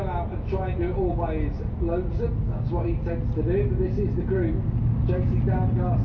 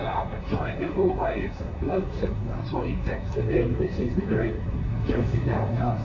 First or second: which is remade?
second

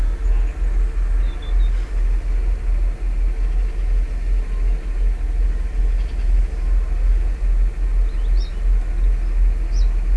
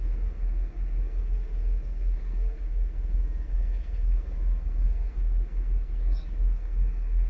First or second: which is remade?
second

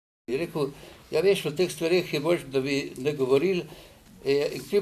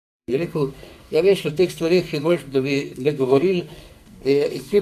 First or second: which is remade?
second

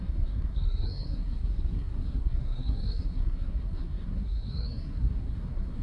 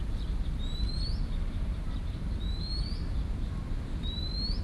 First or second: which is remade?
first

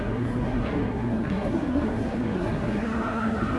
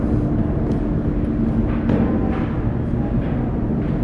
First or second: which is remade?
first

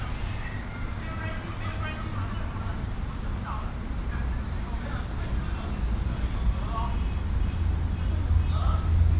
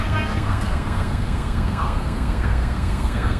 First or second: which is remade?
second